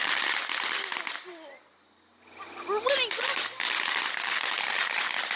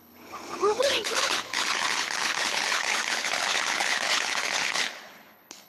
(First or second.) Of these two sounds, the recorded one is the first